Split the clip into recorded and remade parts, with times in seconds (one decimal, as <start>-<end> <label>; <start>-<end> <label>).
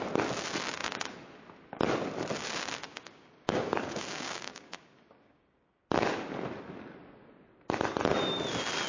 0.0-2.9 recorded; 2.9-5.8 remade; 5.8-8.9 recorded